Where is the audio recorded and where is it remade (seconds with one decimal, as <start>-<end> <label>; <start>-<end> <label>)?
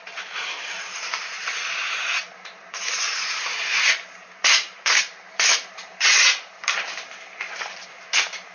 0.0-8.5 remade